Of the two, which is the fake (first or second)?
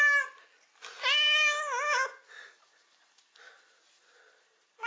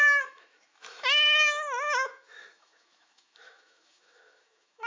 second